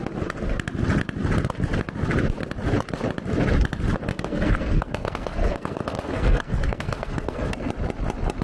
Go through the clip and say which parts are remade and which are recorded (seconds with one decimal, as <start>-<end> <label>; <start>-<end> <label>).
0.0-4.1 recorded; 4.1-7.7 remade; 7.7-8.4 recorded